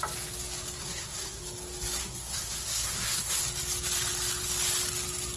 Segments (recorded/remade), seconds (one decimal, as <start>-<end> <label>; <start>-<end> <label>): 0.0-0.8 recorded; 0.8-1.4 remade; 1.4-2.0 recorded; 2.0-3.4 remade; 3.4-5.4 recorded